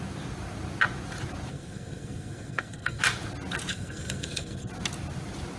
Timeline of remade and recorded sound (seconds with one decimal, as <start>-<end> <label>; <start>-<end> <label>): 0.0-1.5 recorded; 1.5-3.0 remade; 3.0-3.7 recorded; 3.7-4.7 remade; 4.7-5.6 recorded